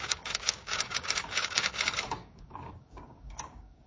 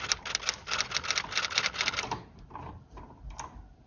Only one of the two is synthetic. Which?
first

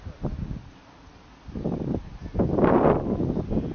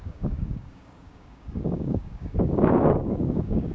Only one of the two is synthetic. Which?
second